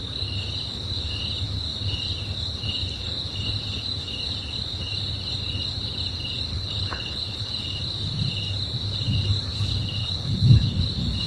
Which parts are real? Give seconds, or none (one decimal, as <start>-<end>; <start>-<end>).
0.0-6.5; 7.5-10.0; 10.8-11.3